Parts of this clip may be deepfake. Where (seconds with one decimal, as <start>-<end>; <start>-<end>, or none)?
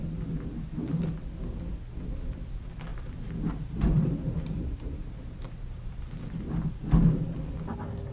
2.9-6.0